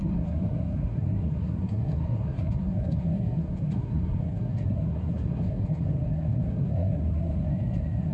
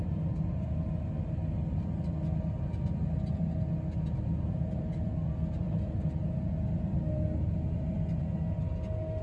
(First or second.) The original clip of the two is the second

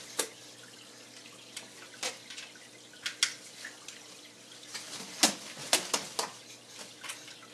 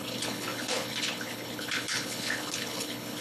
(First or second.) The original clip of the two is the first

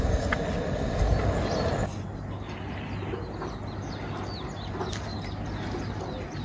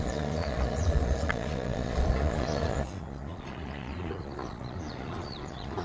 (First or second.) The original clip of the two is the first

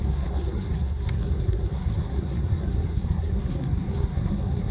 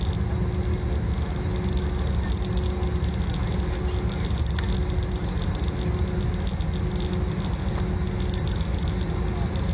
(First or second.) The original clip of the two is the second